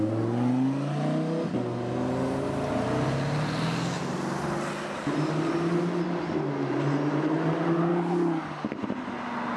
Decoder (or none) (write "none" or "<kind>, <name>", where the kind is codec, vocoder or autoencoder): none